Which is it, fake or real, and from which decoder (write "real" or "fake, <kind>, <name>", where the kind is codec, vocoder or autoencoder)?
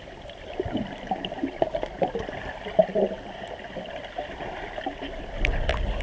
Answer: real